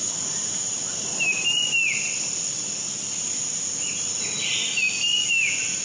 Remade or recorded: recorded